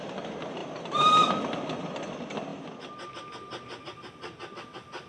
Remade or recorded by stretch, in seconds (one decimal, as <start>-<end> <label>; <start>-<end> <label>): 0.0-5.1 recorded